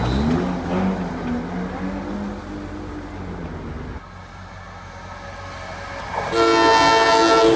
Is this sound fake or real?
real